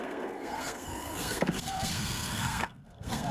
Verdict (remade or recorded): remade